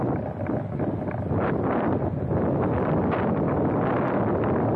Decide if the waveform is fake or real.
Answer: real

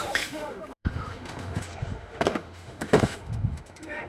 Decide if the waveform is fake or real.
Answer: fake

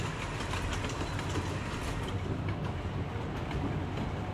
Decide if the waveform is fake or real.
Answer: real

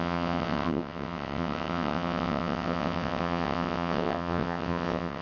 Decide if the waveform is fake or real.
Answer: fake